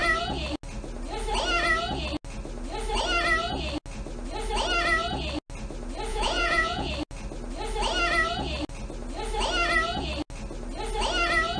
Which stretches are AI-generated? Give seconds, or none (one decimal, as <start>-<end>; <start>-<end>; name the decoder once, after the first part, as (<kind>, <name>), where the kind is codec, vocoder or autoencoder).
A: 6.1-6.9 (vocoder, Vocos)